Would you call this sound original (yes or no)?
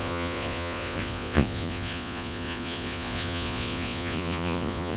no